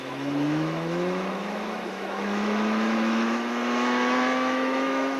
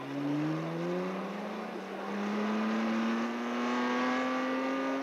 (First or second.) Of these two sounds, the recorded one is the second